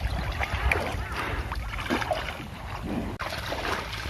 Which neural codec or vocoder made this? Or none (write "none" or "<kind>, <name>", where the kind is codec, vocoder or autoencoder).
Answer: none